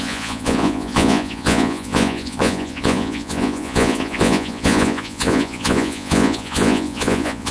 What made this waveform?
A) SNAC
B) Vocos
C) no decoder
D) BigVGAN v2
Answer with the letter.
B